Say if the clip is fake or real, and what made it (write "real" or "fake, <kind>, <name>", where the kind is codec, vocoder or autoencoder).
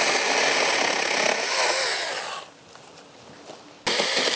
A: real